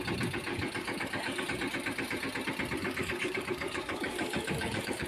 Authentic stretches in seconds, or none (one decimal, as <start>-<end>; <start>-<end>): 0.0-0.5; 1.4-2.8